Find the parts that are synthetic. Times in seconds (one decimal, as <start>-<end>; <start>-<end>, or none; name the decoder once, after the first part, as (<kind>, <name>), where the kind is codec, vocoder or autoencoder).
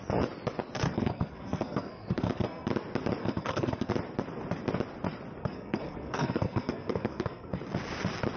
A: 0.9-2.7 (codec, SNAC); 3.2-3.9; 5.4-7.6